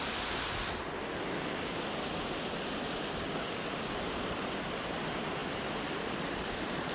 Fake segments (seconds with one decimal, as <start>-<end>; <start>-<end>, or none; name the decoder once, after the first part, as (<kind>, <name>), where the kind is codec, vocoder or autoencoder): 5.4-6.9 (vocoder, BigVGAN v2)